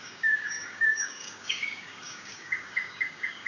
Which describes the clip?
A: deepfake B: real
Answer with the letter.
A